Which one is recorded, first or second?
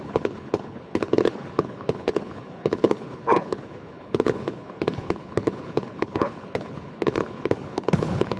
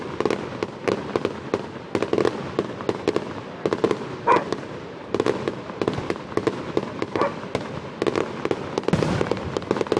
second